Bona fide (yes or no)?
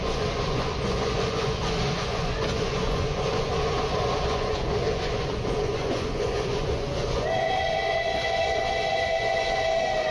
no